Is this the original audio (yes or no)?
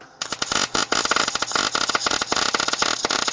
yes